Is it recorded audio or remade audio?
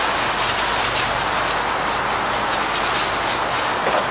recorded